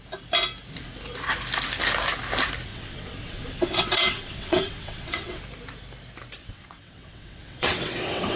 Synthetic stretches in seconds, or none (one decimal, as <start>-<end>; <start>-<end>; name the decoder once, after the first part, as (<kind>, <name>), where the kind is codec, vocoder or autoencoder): 2.7-5.4 (vocoder, WaveNeXt); 6.4-8.4